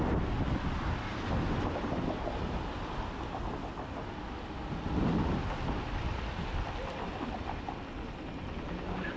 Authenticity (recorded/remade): recorded